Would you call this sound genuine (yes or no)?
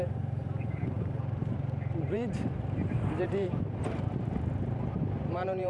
no